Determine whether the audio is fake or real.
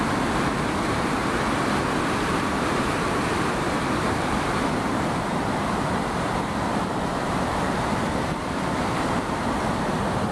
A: fake